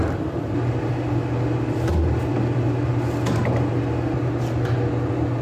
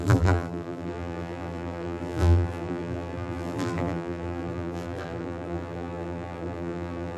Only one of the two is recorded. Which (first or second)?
first